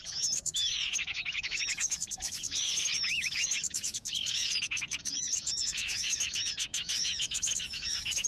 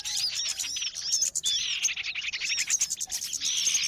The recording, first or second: second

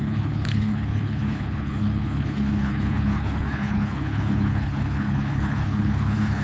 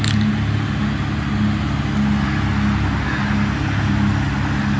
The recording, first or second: second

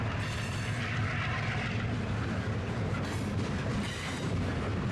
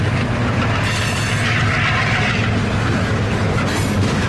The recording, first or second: second